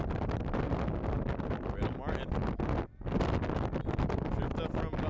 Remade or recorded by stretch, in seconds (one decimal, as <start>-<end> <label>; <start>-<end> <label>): 0.0-5.1 recorded